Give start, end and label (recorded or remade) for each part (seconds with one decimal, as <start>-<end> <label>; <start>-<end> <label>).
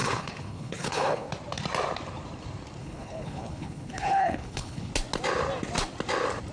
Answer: 0.0-1.3 remade; 1.3-2.8 recorded; 2.8-4.9 remade; 4.9-6.5 recorded